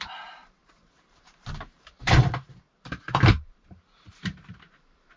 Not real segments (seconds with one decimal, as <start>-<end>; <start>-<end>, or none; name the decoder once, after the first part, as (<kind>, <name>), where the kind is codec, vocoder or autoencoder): 0.0-5.2 (vocoder, BigVGAN v2)

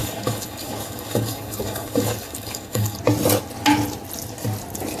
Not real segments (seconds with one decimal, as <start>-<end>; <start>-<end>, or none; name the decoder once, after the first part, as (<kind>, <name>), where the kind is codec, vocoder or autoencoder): 0.0-3.0 (codec, DAC)

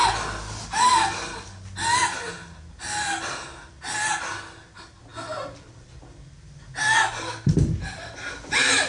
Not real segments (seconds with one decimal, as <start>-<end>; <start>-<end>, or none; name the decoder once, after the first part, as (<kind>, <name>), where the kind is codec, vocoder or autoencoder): none

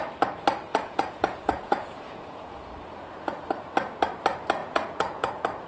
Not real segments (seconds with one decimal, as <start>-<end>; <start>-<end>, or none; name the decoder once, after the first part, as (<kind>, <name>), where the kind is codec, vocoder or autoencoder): 0.7-2.6 (vocoder, Vocos); 4.6-5.3